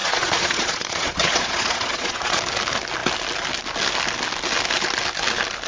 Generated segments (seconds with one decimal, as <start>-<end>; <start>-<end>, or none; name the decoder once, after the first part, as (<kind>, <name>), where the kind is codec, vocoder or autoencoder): 0.0-2.4 (vocoder, Vocos)